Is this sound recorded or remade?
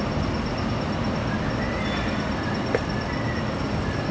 recorded